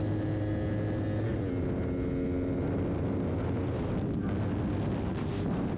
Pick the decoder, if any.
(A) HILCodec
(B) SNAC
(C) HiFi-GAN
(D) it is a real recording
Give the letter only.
D